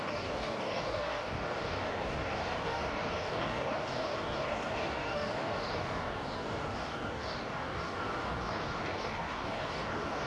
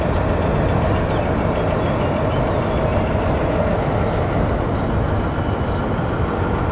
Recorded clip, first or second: second